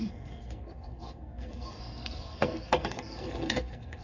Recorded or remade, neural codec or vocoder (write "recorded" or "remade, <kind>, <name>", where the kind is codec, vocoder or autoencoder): remade, codec, SNAC